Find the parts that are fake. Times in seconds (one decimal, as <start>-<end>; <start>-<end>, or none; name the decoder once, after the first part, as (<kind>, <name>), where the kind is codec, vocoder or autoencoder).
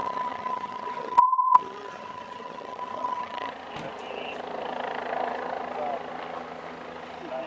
0.0-3.5 (vocoder, HiFi-GAN)